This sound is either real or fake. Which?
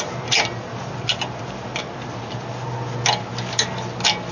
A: real